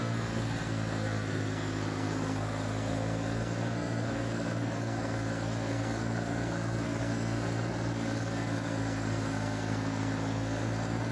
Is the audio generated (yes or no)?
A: yes